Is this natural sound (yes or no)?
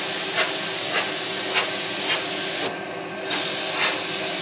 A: yes